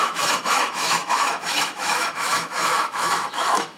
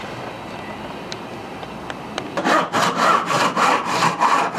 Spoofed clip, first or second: first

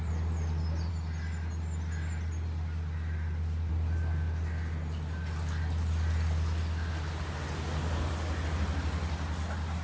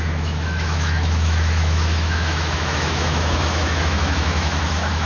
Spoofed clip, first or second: second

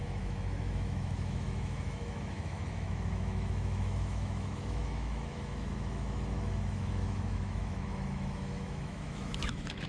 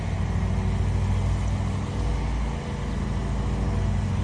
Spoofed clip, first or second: first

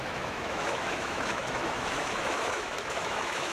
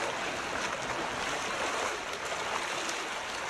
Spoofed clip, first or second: first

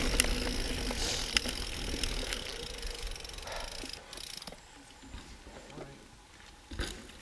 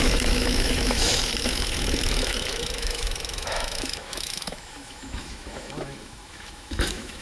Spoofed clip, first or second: second